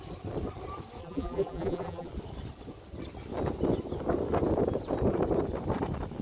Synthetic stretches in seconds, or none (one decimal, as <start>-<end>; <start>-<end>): 1.0-2.1

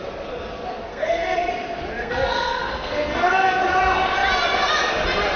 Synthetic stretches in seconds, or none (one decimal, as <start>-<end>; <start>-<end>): 0.9-1.5; 2.0-3.6

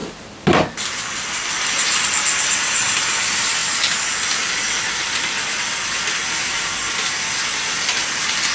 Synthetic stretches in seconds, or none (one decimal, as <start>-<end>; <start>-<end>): none

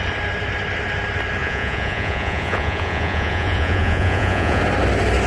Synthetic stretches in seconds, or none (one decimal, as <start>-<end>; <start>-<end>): 1.4-4.6

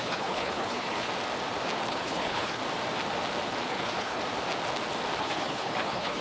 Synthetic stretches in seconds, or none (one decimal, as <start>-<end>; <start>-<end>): 0.0-1.1; 1.9-2.6; 3.7-4.2; 5.2-6.2